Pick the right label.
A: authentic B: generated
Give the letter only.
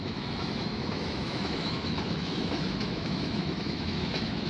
B